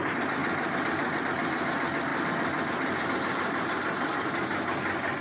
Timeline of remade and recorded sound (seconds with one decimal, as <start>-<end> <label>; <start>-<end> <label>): 0.0-5.2 recorded